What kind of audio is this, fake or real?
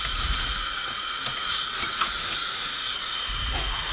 fake